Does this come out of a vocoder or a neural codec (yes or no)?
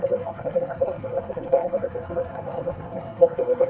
yes